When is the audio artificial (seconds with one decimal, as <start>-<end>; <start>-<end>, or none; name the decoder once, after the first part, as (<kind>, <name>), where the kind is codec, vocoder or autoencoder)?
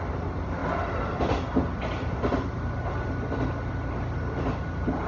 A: none